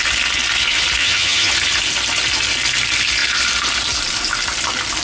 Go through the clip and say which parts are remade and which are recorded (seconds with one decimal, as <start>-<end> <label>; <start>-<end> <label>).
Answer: 0.0-1.0 recorded; 1.0-1.5 remade; 1.5-5.0 recorded